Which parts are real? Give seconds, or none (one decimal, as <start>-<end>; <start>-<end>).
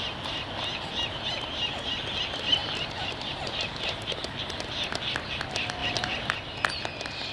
0.0-0.7; 2.0-2.6; 4.3-7.3